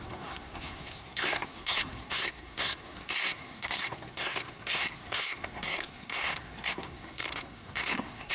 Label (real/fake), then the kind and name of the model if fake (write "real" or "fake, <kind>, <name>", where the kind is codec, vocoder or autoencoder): fake, codec, SNAC